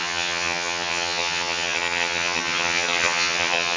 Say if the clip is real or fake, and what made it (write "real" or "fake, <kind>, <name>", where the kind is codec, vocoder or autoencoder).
fake, vocoder, HiFi-GAN